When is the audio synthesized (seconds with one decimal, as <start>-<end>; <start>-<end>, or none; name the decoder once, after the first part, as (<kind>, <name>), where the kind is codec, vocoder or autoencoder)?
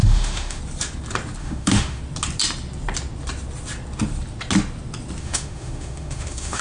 0.0-0.6 (autoencoder, DAC-VAE); 1.4-2.0; 5.2-6.6